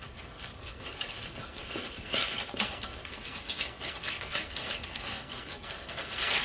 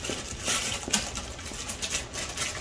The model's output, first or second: first